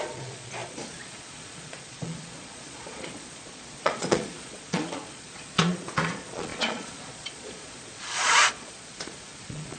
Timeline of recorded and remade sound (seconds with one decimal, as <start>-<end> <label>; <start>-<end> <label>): 0.0-9.8 remade